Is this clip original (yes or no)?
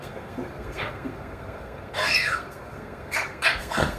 no